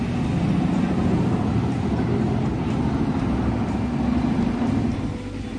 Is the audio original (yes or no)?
yes